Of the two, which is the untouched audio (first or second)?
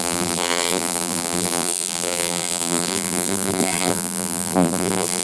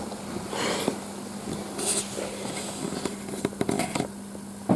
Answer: second